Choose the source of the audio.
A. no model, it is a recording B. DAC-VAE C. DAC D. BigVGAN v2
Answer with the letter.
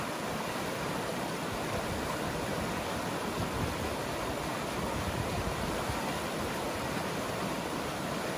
A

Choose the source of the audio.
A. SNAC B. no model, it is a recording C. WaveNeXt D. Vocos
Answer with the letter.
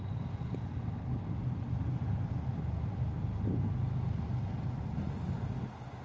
B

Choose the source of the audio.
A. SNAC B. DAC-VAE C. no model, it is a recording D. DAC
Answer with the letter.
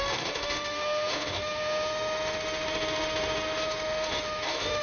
B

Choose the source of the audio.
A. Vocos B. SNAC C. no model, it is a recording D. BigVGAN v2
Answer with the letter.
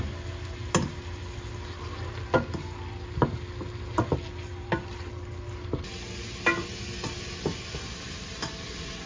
C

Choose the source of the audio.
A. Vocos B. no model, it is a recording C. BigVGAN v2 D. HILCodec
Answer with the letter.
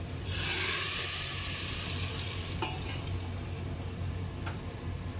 C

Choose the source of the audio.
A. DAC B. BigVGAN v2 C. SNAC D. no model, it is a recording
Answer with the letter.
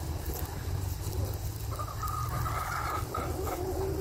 D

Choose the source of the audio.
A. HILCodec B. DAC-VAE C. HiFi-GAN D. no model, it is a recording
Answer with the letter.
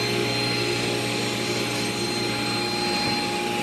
D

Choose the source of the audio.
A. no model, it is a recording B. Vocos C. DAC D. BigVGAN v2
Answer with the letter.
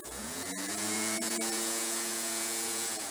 B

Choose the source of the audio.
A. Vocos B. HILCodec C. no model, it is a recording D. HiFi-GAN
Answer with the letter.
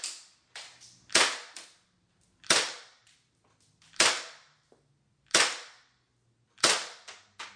C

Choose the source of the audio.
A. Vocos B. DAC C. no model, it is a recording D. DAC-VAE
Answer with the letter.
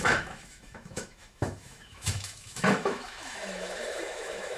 D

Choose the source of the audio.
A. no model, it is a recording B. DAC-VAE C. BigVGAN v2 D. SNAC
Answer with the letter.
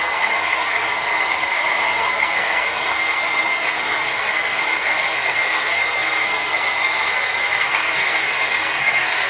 D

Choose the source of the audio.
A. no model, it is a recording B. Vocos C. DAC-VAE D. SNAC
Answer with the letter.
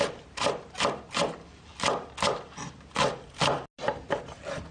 A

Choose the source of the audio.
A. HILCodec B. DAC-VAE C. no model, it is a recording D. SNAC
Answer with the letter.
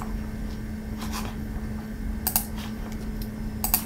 C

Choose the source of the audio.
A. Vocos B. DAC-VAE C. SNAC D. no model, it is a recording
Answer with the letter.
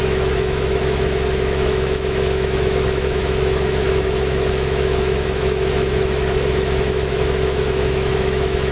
B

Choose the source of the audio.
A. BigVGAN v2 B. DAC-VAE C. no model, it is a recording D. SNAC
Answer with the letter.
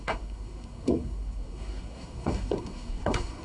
D